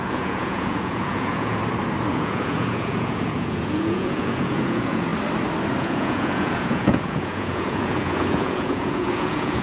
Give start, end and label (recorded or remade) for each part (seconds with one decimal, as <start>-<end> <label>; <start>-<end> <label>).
0.0-1.6 remade; 1.6-2.1 recorded; 2.1-5.1 remade; 5.1-5.8 recorded; 5.8-9.6 remade